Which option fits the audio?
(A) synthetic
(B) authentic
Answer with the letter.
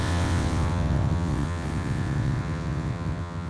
A